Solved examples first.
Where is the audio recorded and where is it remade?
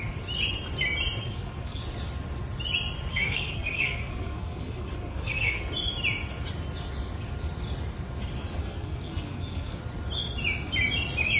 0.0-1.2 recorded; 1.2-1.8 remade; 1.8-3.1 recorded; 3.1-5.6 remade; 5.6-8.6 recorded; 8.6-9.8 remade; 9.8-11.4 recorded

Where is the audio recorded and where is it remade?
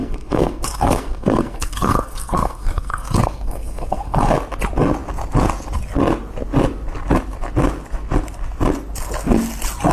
0.0-4.2 remade; 4.2-9.9 recorded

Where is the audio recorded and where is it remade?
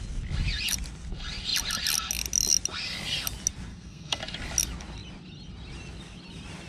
0.0-3.7 recorded; 3.7-4.2 remade; 4.2-6.7 recorded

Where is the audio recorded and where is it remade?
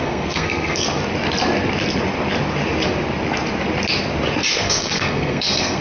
0.0-1.0 remade; 1.0-4.5 recorded; 4.5-5.8 remade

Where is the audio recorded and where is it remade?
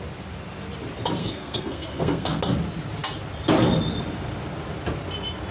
0.0-1.2 recorded; 1.2-2.4 remade; 2.4-5.5 recorded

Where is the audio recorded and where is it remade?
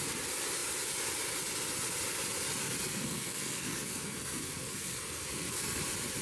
0.0-2.6 recorded; 2.6-5.8 remade; 5.8-6.2 recorded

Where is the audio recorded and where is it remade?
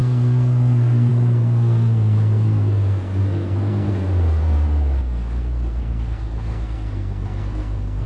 0.0-8.1 remade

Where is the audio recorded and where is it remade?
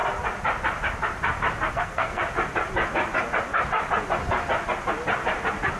0.0-1.7 recorded; 1.7-2.2 remade; 2.2-5.8 recorded